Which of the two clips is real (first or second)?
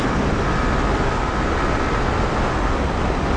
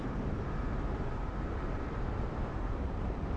first